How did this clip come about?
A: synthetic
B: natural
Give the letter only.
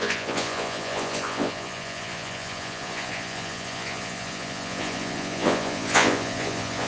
A